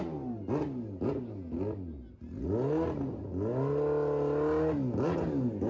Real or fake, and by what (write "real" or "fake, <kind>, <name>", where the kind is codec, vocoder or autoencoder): real